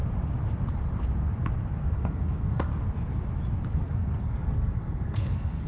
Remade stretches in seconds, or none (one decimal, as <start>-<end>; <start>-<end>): 1.8-2.7; 3.7-5.7